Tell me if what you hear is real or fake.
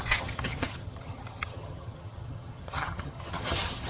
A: fake